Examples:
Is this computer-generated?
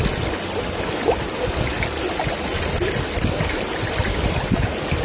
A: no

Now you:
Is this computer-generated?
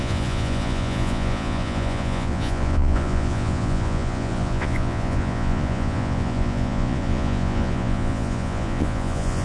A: yes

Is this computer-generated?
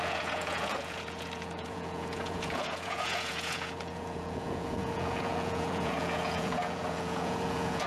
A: yes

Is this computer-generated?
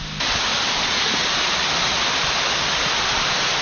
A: no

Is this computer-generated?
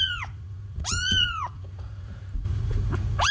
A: yes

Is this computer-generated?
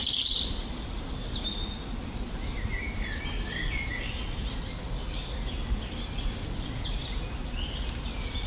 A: no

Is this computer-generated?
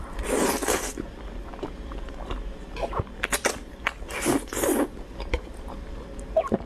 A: no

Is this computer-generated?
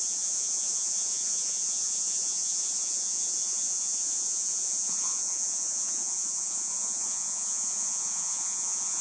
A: yes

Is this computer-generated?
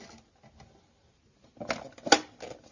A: no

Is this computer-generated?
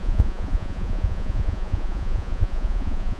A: yes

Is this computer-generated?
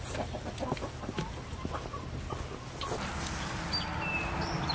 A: no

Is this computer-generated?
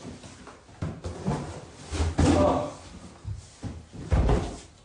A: no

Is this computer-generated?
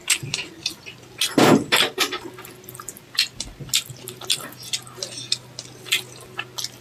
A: no